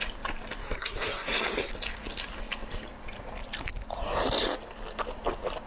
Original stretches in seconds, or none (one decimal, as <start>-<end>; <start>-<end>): 0.0-0.6; 1.7-5.7